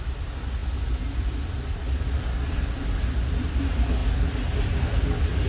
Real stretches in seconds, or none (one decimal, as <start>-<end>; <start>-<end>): 0.0-5.5